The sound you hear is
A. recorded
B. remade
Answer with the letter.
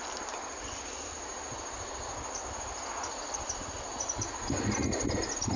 A